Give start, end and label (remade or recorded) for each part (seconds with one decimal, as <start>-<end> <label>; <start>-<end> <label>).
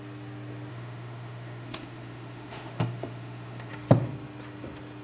0.0-0.7 recorded; 0.7-3.7 remade; 3.7-5.0 recorded